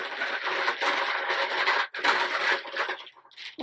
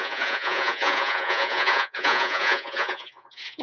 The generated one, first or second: second